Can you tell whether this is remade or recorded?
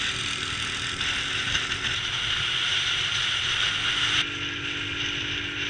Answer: recorded